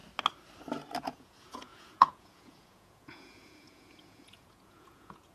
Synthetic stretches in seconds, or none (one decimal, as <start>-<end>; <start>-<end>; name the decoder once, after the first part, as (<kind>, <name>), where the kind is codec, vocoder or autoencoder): 1.0-5.3 (vocoder, Vocos)

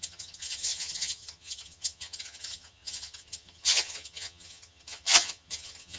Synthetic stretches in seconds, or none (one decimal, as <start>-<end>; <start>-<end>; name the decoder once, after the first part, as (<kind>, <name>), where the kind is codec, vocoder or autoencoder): 0.0-6.0 (vocoder, HiFi-GAN)